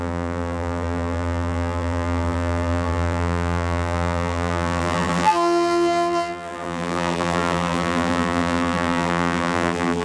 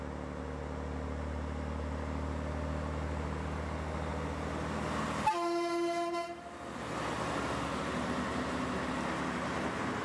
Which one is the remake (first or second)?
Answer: first